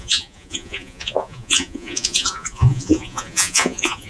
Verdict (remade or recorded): remade